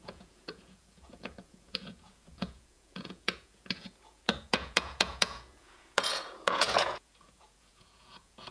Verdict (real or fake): fake